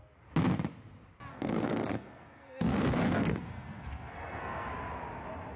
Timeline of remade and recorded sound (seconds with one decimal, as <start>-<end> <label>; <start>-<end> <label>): 0.0-1.3 recorded; 1.3-4.7 remade; 4.7-5.6 recorded